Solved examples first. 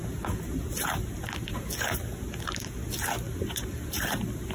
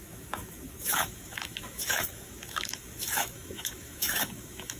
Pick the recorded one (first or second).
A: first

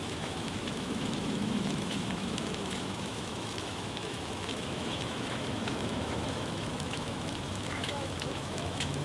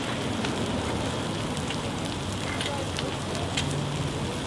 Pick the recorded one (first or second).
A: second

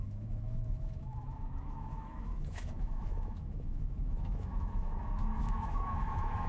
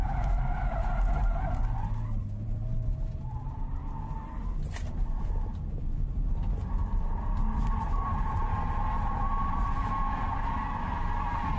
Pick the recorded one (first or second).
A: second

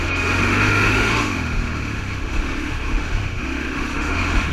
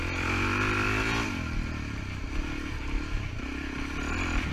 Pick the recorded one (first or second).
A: second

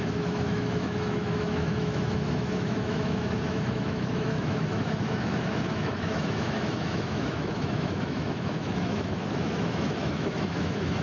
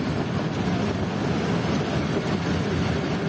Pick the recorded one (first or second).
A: second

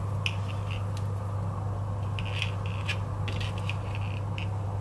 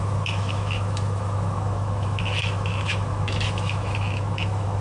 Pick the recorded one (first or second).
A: first